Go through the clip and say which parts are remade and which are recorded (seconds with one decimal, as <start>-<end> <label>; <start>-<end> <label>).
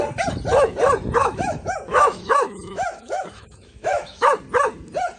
0.0-1.2 recorded; 1.2-4.3 remade; 4.3-5.2 recorded